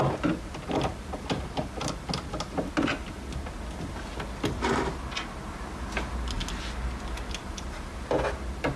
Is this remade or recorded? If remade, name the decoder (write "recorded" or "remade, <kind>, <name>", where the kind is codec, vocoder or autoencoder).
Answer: recorded